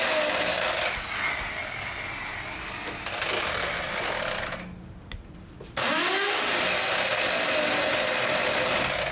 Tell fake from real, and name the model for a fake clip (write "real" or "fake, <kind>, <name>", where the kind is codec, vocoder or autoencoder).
real